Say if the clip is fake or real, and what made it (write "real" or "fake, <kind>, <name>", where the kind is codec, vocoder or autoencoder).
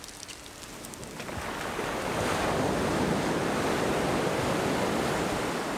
real